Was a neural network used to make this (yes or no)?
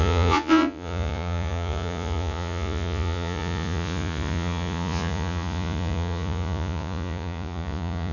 yes